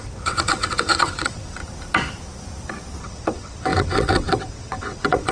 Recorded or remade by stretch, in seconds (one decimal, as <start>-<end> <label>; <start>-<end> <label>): 0.0-1.6 remade; 1.6-3.0 recorded; 3.0-5.3 remade